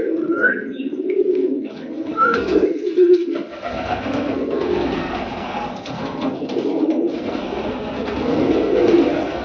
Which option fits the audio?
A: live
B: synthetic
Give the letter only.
B